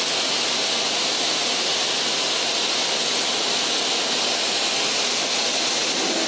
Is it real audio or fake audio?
real